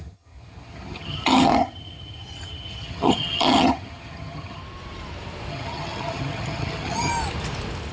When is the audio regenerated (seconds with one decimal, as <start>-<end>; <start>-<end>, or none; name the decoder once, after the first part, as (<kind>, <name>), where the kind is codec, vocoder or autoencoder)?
0.0-4.6 (vocoder, HiFi-GAN); 5.5-7.1